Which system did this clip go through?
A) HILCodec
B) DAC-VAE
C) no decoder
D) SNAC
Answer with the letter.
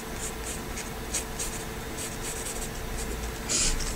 C